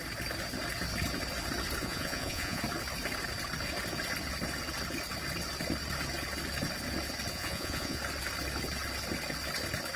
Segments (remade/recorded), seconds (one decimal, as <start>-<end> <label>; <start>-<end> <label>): 0.0-1.8 recorded; 1.8-2.6 remade; 2.6-7.3 recorded; 7.3-8.0 remade; 8.0-10.0 recorded